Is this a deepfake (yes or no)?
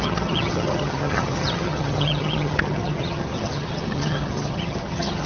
yes